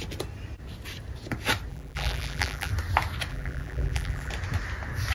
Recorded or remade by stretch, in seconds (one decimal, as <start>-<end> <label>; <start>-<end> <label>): 0.0-1.7 recorded; 1.7-2.7 remade; 2.7-3.3 recorded; 3.3-4.3 remade; 4.3-5.1 recorded